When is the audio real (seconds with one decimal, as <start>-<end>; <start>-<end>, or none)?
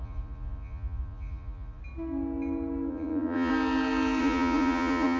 1.8-2.9; 3.5-4.2